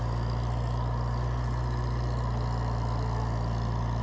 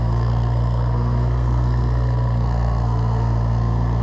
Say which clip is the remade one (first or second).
second